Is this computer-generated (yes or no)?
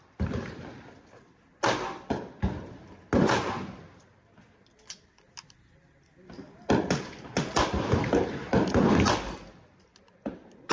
no